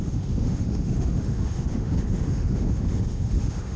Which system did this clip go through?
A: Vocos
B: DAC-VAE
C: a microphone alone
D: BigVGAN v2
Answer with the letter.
B